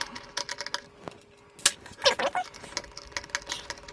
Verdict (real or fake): real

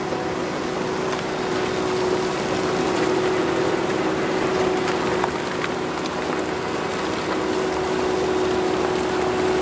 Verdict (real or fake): real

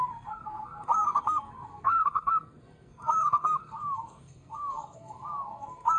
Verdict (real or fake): fake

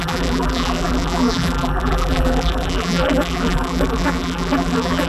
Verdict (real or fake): fake